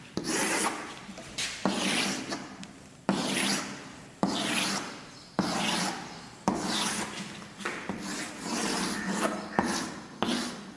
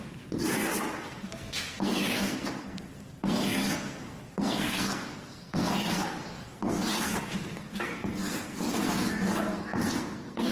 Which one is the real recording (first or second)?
first